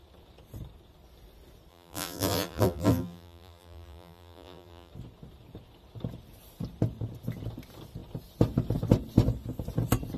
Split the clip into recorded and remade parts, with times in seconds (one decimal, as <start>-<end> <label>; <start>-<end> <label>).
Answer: 0.0-1.7 recorded; 1.7-4.9 remade; 4.9-10.2 recorded